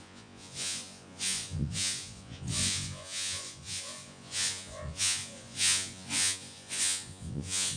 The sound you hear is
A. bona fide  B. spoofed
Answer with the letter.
B